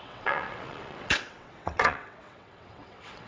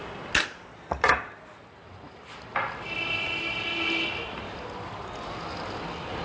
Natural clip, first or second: second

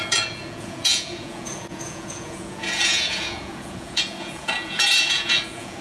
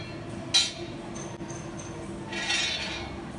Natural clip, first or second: second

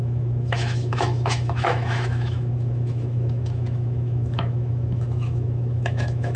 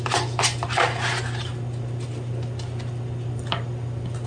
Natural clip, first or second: second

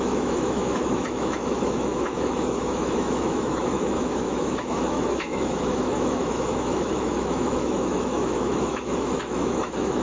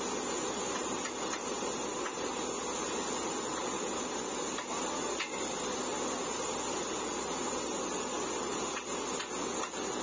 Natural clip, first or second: second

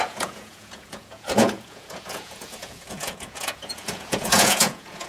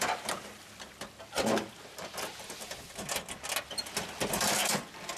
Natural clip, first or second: second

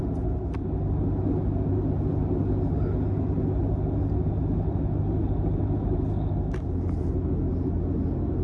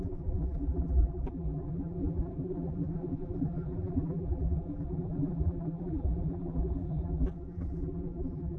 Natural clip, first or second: first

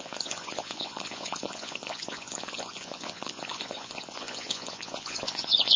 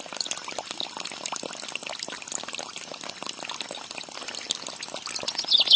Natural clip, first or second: second